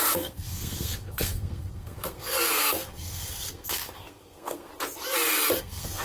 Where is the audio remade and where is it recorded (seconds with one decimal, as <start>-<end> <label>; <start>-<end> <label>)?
0.0-4.7 remade; 4.7-5.6 recorded; 5.6-6.0 remade